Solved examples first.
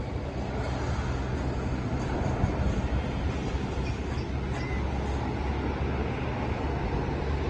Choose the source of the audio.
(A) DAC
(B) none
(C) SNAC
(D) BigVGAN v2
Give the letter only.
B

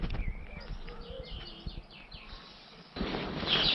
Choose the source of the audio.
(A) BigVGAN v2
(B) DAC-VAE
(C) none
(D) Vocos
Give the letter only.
C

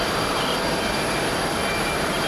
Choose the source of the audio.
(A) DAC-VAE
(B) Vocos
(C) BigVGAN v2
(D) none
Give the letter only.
D